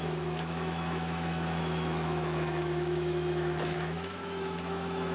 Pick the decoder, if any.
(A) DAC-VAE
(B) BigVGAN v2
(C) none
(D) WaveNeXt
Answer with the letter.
A